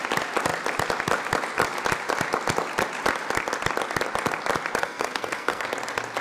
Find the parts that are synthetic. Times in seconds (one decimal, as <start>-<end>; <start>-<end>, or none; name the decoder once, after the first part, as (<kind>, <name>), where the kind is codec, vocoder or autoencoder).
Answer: 4.8-5.7 (codec, SNAC)